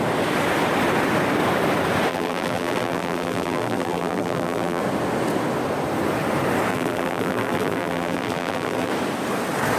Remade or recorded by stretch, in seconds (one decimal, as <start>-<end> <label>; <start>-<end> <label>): 0.0-2.1 recorded; 2.1-4.8 remade; 4.8-6.7 recorded; 6.7-8.9 remade; 8.9-9.8 recorded